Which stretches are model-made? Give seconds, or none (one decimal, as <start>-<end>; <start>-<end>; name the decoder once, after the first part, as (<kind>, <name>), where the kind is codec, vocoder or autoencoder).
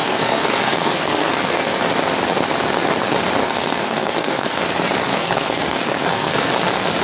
0.0-1.9 (codec, SNAC); 3.4-4.6; 5.1-6.5